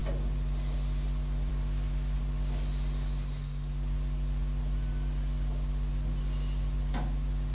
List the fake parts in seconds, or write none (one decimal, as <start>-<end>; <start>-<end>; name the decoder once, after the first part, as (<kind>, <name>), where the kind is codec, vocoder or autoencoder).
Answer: none